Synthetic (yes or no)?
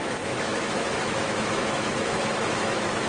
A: yes